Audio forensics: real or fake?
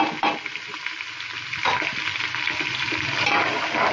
real